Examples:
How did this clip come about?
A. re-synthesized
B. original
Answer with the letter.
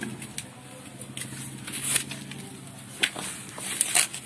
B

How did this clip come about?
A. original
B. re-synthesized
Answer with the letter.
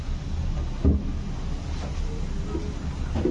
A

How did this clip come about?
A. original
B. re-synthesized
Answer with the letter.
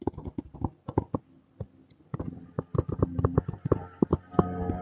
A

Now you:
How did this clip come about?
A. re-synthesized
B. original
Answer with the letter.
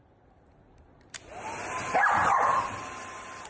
B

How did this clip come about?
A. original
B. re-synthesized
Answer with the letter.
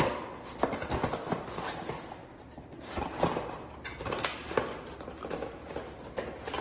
A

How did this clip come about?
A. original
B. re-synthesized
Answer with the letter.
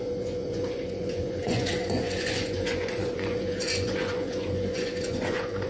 B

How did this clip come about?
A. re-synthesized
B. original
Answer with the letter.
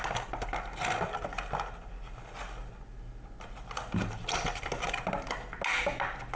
B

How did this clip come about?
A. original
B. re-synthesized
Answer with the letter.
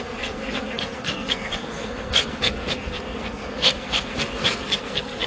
B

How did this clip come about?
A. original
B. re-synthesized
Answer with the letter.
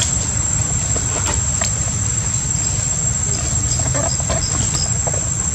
A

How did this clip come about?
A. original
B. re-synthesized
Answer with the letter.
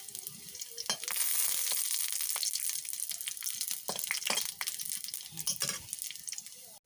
A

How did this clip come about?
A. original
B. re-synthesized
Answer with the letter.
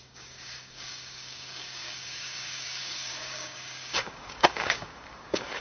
B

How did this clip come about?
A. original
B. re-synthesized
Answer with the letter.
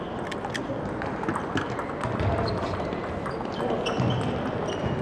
A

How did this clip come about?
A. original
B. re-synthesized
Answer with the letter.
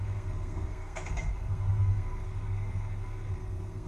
B